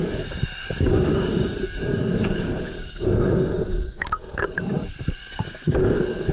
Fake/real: fake